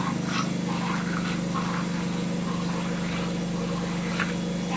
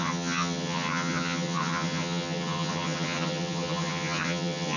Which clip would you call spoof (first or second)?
second